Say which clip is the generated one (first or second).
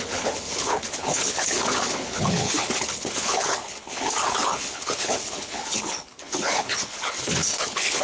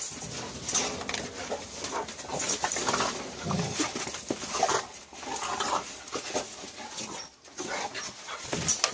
first